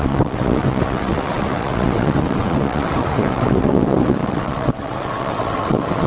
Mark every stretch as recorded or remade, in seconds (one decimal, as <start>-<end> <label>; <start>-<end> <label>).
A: 0.0-6.1 remade